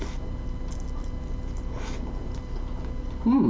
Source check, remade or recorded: recorded